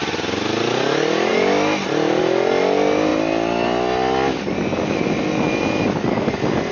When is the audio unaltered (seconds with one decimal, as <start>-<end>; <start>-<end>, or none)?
0.0-6.7